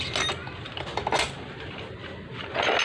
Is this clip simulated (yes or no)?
no